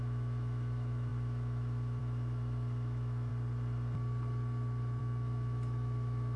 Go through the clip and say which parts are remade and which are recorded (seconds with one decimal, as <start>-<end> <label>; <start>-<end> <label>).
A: 0.0-3.3 remade; 3.3-5.0 recorded; 5.0-6.4 remade

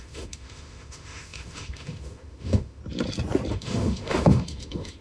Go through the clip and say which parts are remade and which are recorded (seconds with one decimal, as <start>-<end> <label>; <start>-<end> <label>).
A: 0.0-2.8 remade; 2.8-3.5 recorded; 3.5-5.0 remade

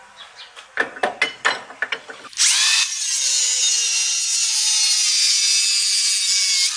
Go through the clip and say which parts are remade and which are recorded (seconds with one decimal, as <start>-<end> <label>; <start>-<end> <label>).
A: 0.0-6.8 recorded

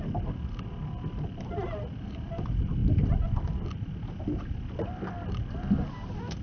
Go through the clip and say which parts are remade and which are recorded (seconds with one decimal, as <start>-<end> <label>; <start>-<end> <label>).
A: 0.0-6.4 recorded

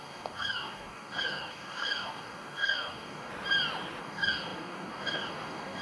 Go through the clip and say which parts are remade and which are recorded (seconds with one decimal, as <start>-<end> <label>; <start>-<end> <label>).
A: 0.0-3.3 remade; 3.3-4.0 recorded; 4.0-5.8 remade

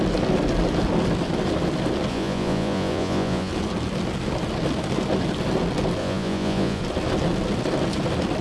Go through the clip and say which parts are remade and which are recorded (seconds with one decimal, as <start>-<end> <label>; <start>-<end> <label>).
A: 0.0-2.1 recorded; 2.1-3.5 remade; 3.5-6.0 recorded; 6.0-6.8 remade; 6.8-8.4 recorded

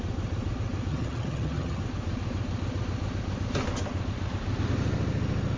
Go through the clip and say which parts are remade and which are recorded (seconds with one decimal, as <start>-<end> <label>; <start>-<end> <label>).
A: 0.0-0.9 recorded; 0.9-1.8 remade; 1.8-5.6 recorded

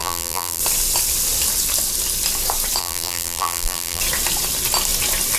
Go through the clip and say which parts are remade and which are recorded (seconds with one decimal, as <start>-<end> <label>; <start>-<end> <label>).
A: 0.0-0.6 remade; 0.6-2.8 recorded; 2.8-4.0 remade; 4.0-5.4 recorded